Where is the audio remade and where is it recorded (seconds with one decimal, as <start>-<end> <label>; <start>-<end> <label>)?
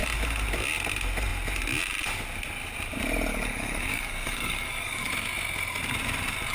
0.0-3.3 recorded; 3.3-5.1 remade; 5.1-6.5 recorded